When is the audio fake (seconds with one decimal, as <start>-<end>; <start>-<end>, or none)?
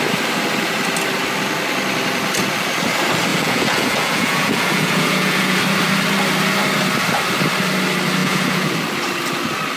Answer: 3.3-5.6; 8.2-8.7